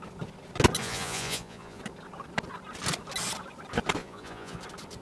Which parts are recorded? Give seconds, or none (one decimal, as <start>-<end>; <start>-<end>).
0.0-0.8; 1.8-4.0; 4.6-5.0